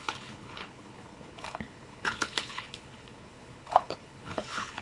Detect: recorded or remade remade